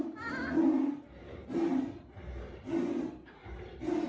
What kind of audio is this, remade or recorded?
recorded